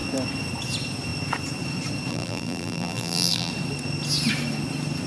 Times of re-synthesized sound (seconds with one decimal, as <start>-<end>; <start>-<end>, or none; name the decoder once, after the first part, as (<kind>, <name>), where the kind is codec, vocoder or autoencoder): 2.1-3.5 (vocoder, BigVGAN v2)